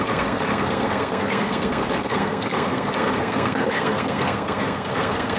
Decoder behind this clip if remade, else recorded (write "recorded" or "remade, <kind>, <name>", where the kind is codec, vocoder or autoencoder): remade, codec, SNAC